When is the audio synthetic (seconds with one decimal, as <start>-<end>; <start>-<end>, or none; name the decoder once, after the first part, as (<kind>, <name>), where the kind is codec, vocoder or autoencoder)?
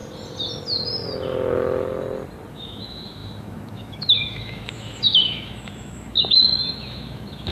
2.5-7.5 (autoencoder, DAC-VAE)